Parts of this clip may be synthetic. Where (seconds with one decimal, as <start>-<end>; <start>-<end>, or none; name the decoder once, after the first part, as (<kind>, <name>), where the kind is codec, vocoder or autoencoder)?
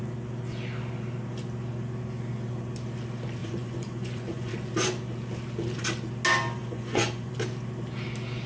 3.4-4.5 (vocoder, Vocos); 6.6-7.3